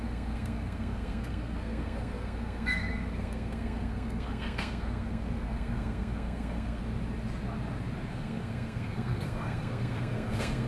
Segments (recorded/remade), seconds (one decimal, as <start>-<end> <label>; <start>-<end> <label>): 0.0-6.8 remade; 6.8-8.1 recorded; 8.1-10.7 remade